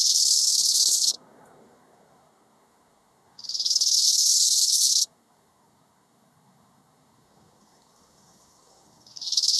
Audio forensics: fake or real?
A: fake